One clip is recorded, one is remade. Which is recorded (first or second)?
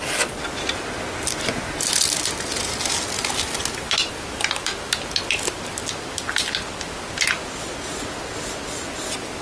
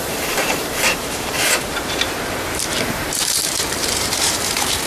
first